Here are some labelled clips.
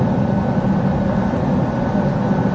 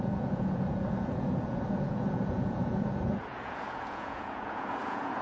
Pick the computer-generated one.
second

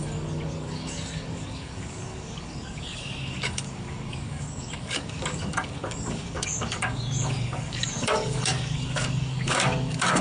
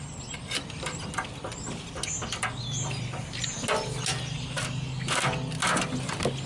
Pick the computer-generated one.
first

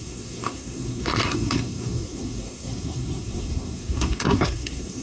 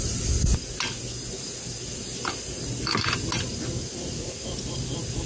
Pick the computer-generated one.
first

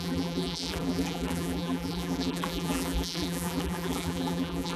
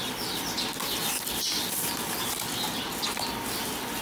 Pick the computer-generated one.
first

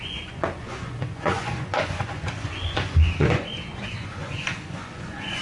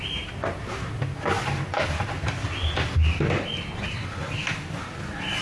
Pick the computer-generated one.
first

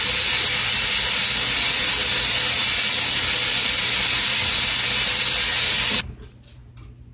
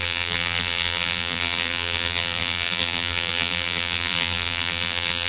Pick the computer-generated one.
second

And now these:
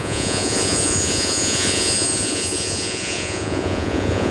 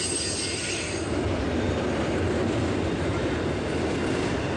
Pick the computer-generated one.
first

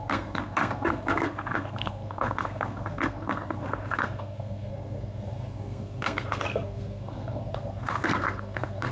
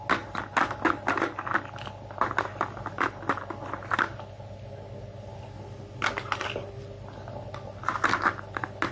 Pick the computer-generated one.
first